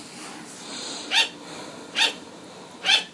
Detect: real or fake real